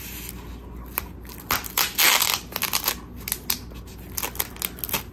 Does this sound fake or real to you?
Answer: real